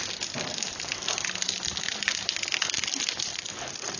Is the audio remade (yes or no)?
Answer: no